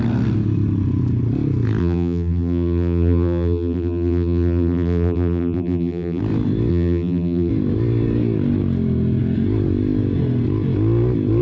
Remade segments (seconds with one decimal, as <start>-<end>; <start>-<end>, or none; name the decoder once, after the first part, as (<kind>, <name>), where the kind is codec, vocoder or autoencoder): 1.8-6.2 (vocoder, BigVGAN v2); 6.7-7.5